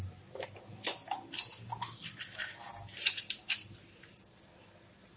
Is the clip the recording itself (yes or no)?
yes